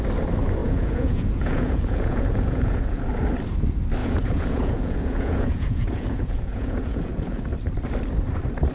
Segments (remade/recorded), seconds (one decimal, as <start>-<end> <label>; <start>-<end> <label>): 0.0-0.6 recorded; 0.6-3.0 remade; 3.0-4.0 recorded; 4.0-7.4 remade; 7.4-8.7 recorded